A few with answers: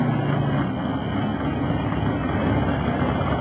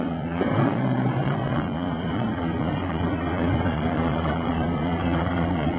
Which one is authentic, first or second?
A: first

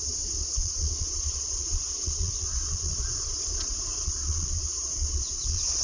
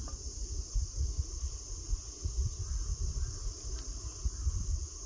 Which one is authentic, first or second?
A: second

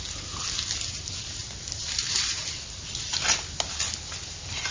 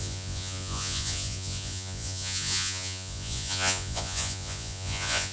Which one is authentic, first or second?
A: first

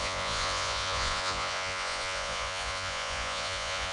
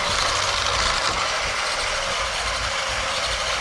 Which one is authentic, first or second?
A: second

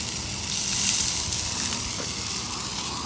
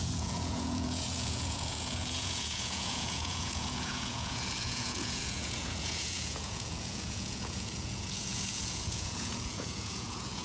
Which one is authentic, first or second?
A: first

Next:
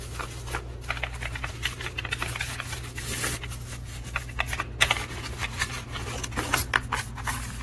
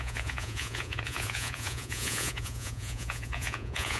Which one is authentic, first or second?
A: first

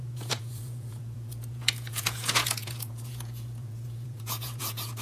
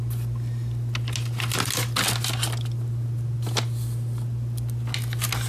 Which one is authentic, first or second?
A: second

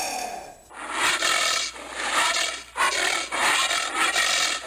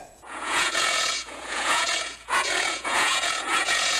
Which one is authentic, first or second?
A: first